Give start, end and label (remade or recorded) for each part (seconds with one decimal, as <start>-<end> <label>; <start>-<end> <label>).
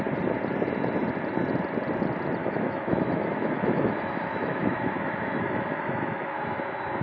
0.0-2.4 recorded; 2.4-6.6 remade; 6.6-7.0 recorded